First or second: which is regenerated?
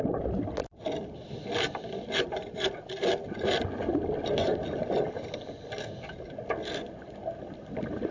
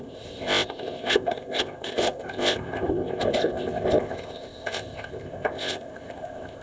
second